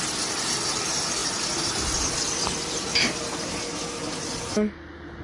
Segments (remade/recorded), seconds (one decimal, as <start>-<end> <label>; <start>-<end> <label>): 0.0-5.2 recorded